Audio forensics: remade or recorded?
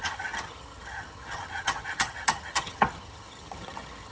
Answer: remade